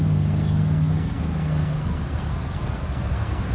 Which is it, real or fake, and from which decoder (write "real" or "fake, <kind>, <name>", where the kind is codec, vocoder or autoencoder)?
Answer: fake, codec, SNAC